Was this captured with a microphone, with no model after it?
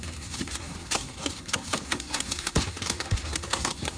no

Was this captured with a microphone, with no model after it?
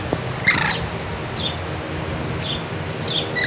no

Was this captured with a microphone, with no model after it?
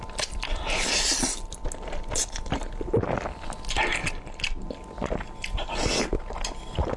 yes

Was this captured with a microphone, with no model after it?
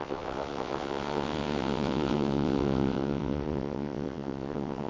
no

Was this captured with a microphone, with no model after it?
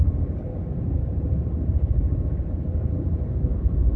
no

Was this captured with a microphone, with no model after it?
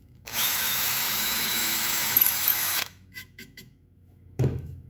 no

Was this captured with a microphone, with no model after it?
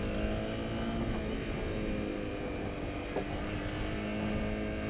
yes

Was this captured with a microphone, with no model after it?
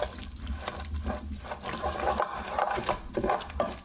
yes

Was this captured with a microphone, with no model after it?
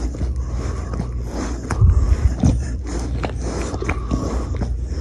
yes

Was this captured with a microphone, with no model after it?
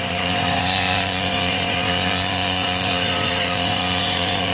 no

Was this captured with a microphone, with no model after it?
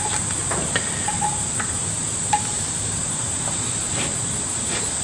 no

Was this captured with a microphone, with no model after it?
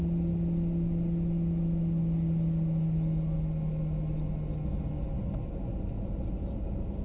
yes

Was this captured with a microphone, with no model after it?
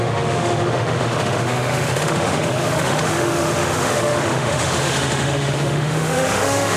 no